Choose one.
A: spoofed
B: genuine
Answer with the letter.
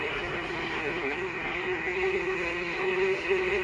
A